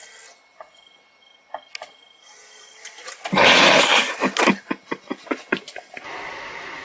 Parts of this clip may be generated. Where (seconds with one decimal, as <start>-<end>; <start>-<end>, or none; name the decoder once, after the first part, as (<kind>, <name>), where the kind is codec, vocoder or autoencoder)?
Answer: none